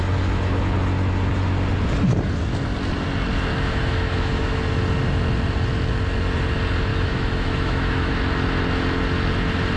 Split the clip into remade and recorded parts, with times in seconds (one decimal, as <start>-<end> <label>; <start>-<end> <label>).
0.0-3.5 recorded; 3.5-4.6 remade; 4.6-6.9 recorded; 6.9-8.1 remade; 8.1-9.8 recorded